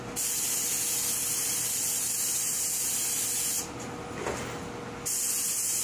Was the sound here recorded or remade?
recorded